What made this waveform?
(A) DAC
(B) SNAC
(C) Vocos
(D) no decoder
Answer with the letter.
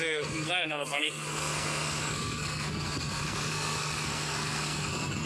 B